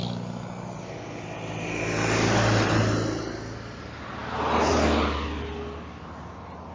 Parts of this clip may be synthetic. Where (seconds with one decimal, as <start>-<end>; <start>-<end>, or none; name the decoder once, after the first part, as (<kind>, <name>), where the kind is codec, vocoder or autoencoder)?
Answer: none